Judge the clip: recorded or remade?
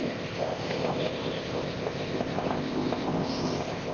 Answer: remade